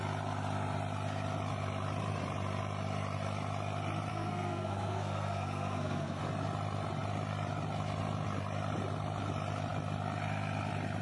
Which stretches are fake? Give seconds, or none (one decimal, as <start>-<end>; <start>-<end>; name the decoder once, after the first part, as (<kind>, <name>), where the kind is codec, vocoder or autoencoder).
4.1-6.2 (codec, SNAC)